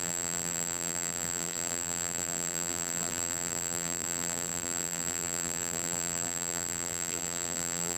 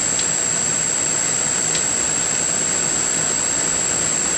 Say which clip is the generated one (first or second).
first